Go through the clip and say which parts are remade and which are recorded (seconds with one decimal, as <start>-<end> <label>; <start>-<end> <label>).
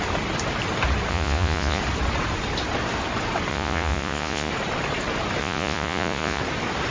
0.0-1.1 recorded; 1.1-1.8 remade; 1.8-3.5 recorded; 3.5-4.5 remade; 4.5-5.4 recorded; 5.4-6.4 remade; 6.4-6.9 recorded